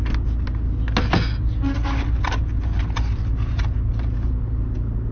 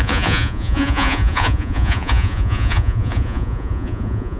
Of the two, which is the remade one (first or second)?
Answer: second